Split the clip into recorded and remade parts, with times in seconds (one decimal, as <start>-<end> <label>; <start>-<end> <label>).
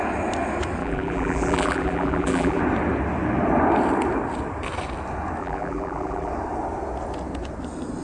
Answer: 0.0-0.8 recorded; 0.8-2.6 remade; 2.6-5.4 recorded; 5.4-6.3 remade; 6.3-8.0 recorded